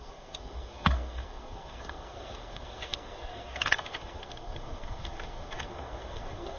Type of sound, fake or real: fake